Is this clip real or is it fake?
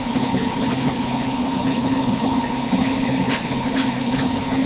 fake